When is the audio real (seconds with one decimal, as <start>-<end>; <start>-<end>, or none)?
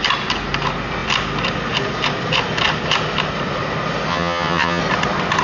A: 0.0-4.1; 4.8-5.4